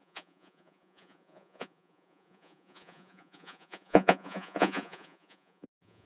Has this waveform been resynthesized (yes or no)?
yes